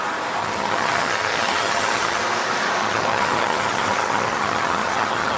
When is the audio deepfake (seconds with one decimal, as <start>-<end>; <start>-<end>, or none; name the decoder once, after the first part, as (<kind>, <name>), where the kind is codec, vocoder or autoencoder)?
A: 0.4-2.2 (vocoder, HiFi-GAN); 2.8-5.4